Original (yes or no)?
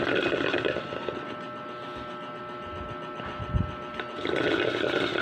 yes